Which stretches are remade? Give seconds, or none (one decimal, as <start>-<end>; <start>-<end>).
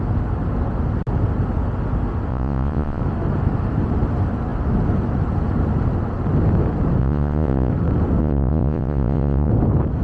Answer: 2.3-3.0; 7.0-7.7; 8.2-9.5